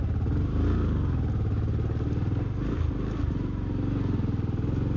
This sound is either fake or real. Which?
real